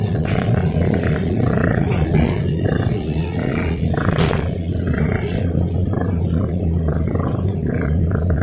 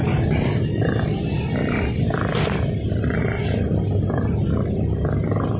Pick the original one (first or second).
second